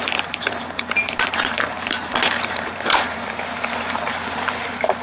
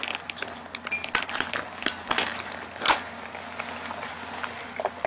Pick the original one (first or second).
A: second